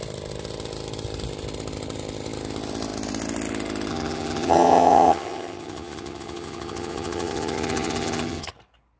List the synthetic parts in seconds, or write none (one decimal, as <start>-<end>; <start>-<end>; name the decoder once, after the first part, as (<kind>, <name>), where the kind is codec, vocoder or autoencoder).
3.9-8.5 (vocoder, HiFi-GAN)